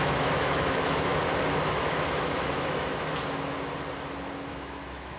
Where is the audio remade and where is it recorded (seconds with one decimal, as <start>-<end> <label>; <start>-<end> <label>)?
0.0-1.1 remade; 1.1-1.8 recorded; 1.8-2.9 remade; 2.9-4.5 recorded; 4.5-5.2 remade